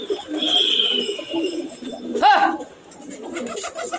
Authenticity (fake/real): fake